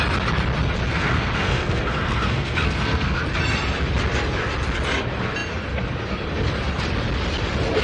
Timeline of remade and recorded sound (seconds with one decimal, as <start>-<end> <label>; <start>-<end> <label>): 0.0-0.9 recorded; 0.9-3.2 remade; 3.2-7.8 recorded